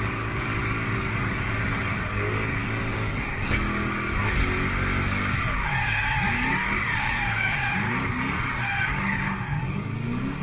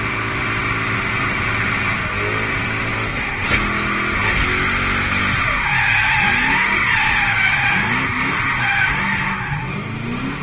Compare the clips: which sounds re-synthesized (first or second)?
first